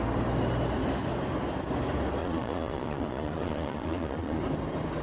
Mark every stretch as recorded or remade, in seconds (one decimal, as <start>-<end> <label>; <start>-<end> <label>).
0.0-2.2 recorded; 2.2-4.4 remade; 4.4-5.0 recorded